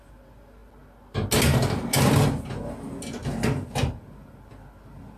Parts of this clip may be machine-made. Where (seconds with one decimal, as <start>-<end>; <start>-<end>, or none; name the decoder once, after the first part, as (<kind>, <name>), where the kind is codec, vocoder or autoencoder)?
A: none